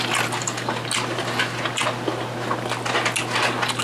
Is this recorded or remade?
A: recorded